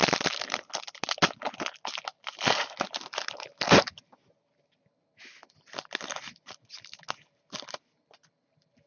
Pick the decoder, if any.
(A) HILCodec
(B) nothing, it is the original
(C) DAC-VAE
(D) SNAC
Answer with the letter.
B